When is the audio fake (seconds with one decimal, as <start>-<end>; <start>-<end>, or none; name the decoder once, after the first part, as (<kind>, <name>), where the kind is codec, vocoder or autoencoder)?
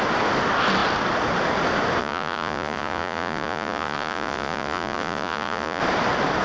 2.0-5.8 (vocoder, Vocos)